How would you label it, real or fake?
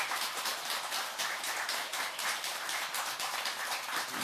fake